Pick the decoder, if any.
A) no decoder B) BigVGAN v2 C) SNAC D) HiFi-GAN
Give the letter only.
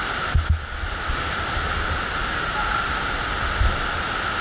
A